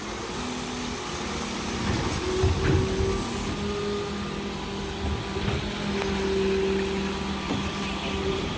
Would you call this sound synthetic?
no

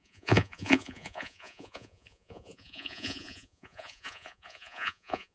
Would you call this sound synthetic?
yes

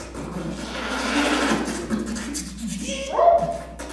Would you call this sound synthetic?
no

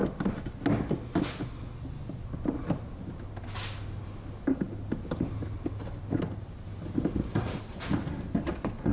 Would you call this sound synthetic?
no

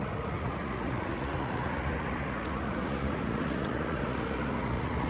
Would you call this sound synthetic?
yes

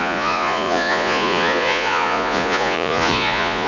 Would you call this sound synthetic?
yes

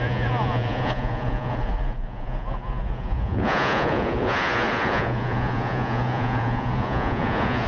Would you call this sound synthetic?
yes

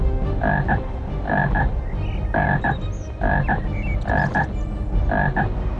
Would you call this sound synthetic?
no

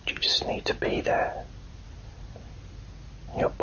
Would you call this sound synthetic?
no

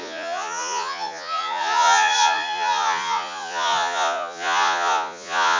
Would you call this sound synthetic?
yes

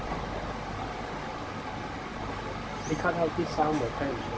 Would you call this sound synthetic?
no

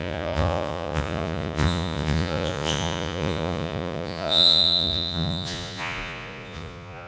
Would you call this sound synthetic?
yes